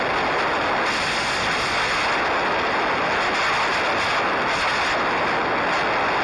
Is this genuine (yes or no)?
yes